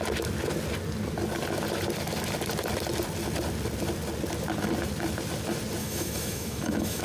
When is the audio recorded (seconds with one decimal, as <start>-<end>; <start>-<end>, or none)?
0.0-5.8